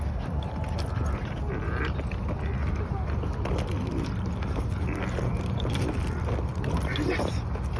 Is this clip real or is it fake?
real